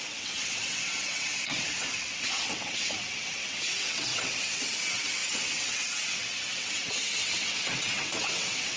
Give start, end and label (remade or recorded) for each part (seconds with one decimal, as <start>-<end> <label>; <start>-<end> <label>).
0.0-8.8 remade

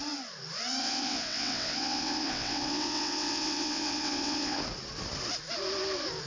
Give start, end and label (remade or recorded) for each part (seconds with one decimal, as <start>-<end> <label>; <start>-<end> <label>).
0.0-0.8 recorded; 0.8-4.6 remade; 4.6-6.3 recorded

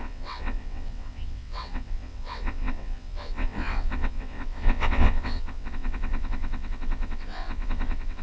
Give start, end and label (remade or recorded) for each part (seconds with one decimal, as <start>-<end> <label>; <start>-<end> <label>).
0.0-8.2 remade

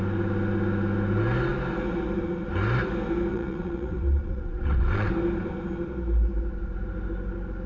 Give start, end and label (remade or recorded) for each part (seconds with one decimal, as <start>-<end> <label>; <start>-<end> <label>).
0.0-3.3 recorded; 3.3-5.1 remade; 5.1-7.7 recorded

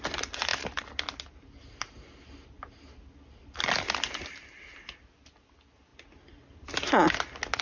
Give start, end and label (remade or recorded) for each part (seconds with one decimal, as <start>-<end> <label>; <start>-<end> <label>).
0.0-7.6 recorded

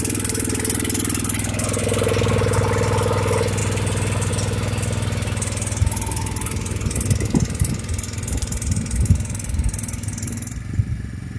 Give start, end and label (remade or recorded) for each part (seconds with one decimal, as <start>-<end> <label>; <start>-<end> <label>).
0.0-11.4 recorded

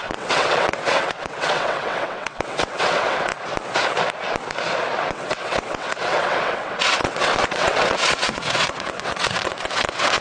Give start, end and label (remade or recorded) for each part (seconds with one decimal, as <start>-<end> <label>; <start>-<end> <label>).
0.0-3.3 remade; 3.3-5.1 recorded; 5.1-10.2 remade

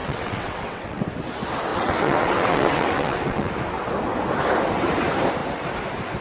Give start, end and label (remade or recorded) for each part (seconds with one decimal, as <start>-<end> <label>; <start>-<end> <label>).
0.0-1.0 remade; 1.0-1.7 recorded; 1.7-3.5 remade; 3.5-6.2 recorded